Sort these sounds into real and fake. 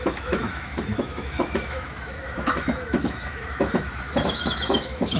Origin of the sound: fake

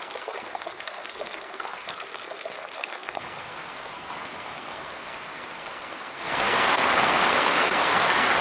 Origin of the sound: fake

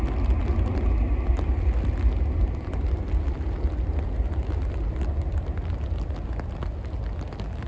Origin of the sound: real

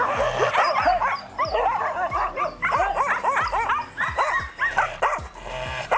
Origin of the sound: real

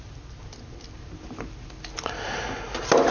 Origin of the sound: real